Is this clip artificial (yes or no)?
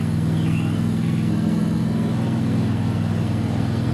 yes